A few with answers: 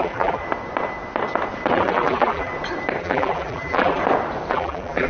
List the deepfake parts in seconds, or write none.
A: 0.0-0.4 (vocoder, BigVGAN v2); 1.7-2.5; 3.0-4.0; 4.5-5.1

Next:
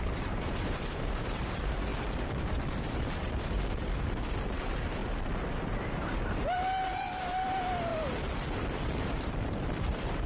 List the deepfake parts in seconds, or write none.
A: 0.0-1.9 (vocoder, BigVGAN v2); 2.4-5.0; 5.9-7.9; 9.0-10.3

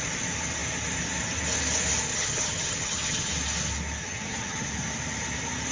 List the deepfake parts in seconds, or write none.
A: 2.1-3.3 (vocoder, HiFi-GAN); 4.0-4.7

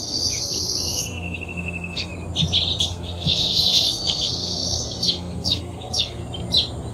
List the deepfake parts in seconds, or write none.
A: 0.0-2.1 (codec, SNAC); 2.8-6.2

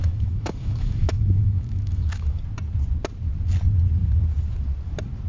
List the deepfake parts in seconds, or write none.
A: 0.0-2.4 (autoencoder, DAC-VAE)